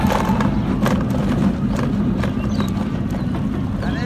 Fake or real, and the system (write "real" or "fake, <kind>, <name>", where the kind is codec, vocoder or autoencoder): real